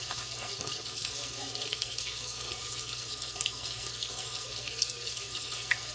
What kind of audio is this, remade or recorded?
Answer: remade